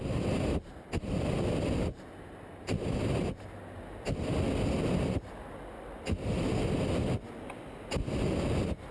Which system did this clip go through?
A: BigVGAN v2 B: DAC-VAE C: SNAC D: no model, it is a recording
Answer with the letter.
D